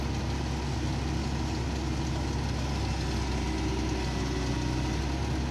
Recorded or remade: recorded